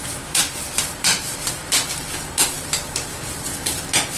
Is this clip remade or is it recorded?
recorded